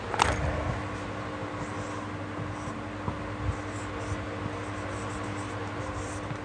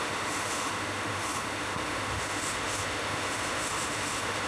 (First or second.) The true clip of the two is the first